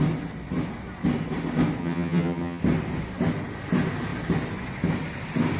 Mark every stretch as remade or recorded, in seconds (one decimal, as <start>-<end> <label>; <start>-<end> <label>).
0.0-1.8 recorded; 1.8-2.6 remade; 2.6-5.6 recorded